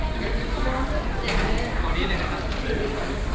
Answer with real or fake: real